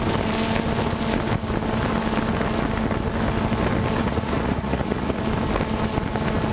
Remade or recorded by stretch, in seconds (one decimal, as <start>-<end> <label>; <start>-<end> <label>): 0.0-4.0 recorded; 4.0-5.2 remade; 5.2-6.5 recorded